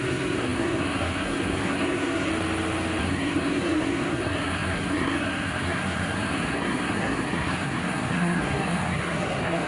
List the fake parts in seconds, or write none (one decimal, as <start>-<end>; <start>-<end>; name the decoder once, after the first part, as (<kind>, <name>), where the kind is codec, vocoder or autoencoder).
0.0-2.3 (codec, SNAC); 3.0-9.7